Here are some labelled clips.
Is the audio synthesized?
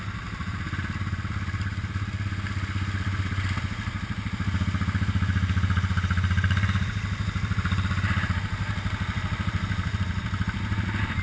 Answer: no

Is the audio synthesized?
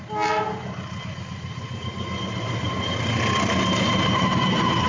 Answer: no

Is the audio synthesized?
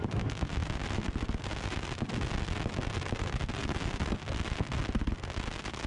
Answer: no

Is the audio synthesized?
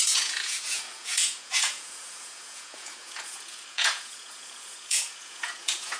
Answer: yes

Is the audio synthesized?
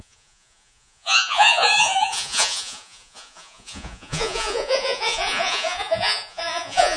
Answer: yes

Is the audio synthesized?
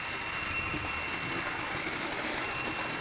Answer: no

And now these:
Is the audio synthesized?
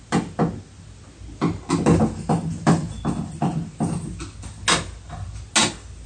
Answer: no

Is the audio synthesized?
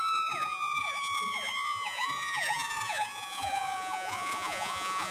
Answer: yes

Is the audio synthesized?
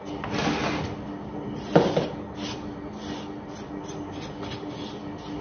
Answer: no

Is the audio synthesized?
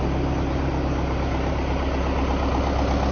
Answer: no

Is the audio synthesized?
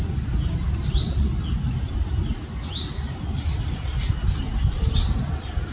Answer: no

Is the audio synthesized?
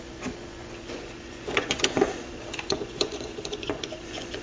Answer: yes